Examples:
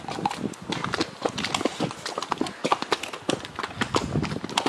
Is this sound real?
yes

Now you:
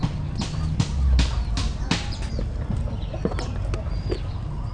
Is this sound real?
yes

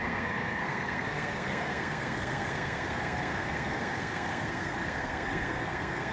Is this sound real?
no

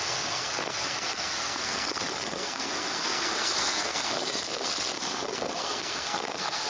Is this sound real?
no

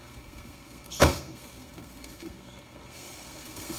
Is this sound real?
no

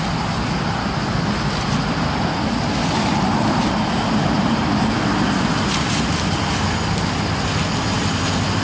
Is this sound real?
yes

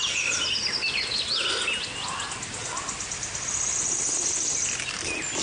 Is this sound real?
yes